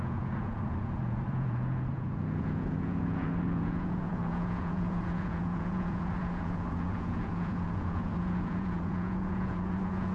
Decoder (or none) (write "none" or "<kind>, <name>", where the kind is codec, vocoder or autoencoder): vocoder, Vocos